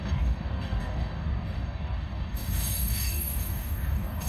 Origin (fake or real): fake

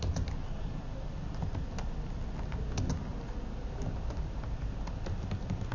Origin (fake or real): real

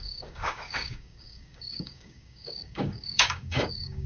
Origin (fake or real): fake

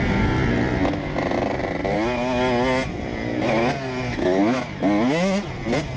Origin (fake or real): real